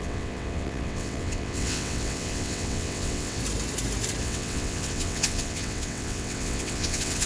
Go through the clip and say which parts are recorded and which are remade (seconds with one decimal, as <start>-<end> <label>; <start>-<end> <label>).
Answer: 0.0-3.4 remade; 3.4-4.2 recorded; 4.2-7.3 remade